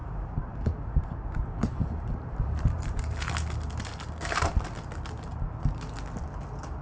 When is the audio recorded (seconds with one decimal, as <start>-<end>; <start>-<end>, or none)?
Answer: 3.3-6.8